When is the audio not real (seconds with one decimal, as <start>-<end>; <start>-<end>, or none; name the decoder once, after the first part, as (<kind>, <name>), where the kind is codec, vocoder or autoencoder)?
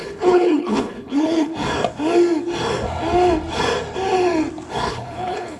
0.0-1.5 (codec, HILCodec); 4.9-5.6